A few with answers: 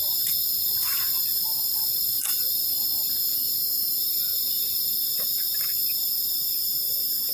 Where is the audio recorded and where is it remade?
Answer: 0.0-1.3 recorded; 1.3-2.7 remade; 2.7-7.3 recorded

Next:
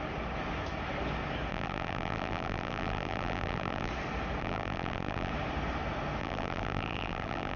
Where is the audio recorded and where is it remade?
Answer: 0.0-1.5 recorded; 1.5-3.9 remade; 3.9-4.4 recorded; 4.4-5.3 remade; 5.3-6.2 recorded; 6.2-7.6 remade

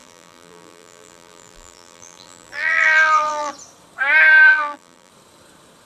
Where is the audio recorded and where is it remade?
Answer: 0.0-3.5 remade; 3.5-4.5 recorded; 4.5-5.1 remade; 5.1-5.9 recorded

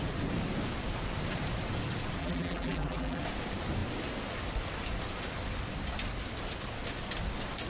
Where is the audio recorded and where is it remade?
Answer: 0.0-2.2 recorded; 2.2-3.2 remade; 3.2-7.7 recorded

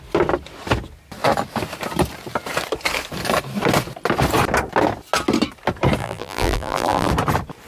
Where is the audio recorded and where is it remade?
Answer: 0.0-6.0 recorded; 6.0-7.1 remade; 7.1-7.7 recorded

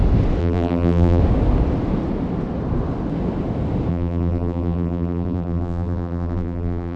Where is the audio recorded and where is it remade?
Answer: 0.0-0.4 recorded; 0.4-1.2 remade; 1.2-3.9 recorded; 3.9-7.0 remade

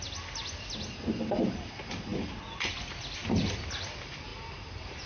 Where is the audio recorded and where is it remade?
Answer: 0.0-4.3 recorded; 4.3-5.1 remade